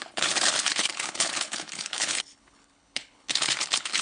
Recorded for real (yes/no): no